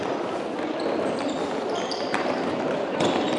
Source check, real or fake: fake